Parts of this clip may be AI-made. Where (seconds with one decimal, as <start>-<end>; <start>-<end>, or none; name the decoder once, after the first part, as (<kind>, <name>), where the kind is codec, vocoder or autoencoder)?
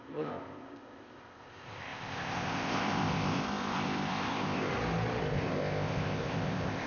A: 0.0-4.7 (codec, ZipCodec); 5.2-6.9